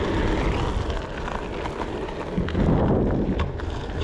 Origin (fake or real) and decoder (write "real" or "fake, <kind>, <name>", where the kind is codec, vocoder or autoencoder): real